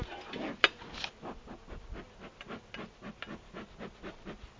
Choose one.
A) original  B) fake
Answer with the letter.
A